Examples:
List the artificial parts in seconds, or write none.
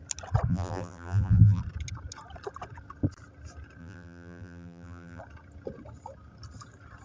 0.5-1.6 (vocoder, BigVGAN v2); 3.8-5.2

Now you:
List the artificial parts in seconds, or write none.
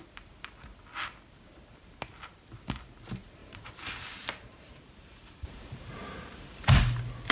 3.4-6.7 (vocoder, BigVGAN v2)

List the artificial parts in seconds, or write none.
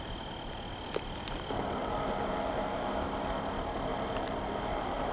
1.8-2.9 (vocoder, BigVGAN v2); 3.9-5.1